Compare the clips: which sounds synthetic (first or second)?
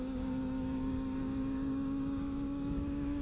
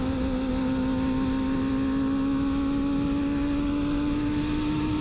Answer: first